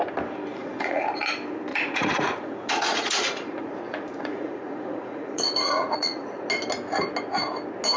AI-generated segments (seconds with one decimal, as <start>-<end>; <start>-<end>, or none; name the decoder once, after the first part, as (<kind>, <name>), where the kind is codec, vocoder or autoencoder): 0.6-1.1 (vocoder, Vocos); 1.7-6.5